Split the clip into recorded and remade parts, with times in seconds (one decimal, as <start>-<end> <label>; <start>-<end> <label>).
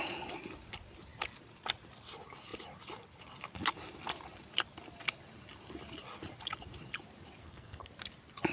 0.0-7.4 recorded; 7.4-7.9 remade; 7.9-8.5 recorded